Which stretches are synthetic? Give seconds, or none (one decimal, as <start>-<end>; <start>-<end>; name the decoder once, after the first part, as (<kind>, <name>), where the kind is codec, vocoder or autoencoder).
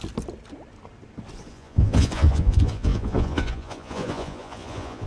1.5-5.1 (vocoder, Vocos)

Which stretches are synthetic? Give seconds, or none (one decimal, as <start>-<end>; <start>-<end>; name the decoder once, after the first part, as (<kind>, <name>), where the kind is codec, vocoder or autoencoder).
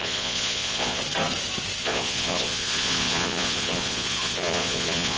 0.0-1.0 (vocoder, Vocos); 1.8-5.2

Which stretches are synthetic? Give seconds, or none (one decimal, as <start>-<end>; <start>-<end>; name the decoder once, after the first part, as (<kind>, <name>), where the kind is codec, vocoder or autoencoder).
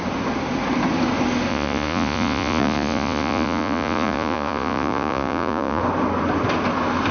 1.5-5.8 (vocoder, Vocos)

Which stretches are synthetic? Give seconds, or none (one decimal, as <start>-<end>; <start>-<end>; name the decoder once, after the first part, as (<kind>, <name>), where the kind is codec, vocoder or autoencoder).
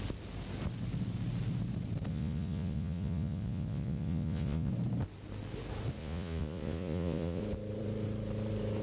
2.1-4.7 (vocoder, Vocos); 6.0-7.4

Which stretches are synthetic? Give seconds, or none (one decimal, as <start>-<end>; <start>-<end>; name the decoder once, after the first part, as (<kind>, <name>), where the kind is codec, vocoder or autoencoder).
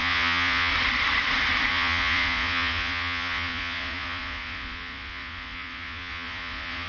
0.0-0.7 (vocoder, Vocos); 1.7-6.9